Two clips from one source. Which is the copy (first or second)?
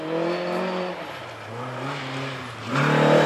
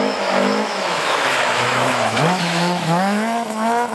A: second